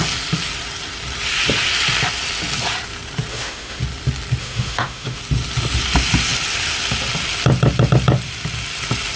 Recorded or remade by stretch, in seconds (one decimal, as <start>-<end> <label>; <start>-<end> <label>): 0.0-3.3 recorded; 3.3-3.8 remade; 3.8-4.4 recorded; 4.4-5.2 remade; 5.2-9.2 recorded